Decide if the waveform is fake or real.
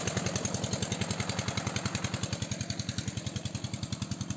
real